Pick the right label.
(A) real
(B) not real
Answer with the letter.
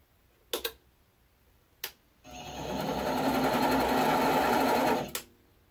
A